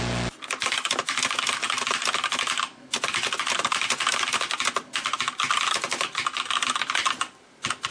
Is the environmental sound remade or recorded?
recorded